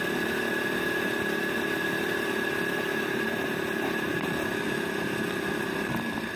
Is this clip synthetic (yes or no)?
no